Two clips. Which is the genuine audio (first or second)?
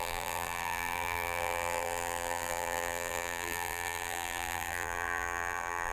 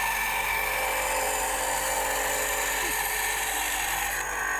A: second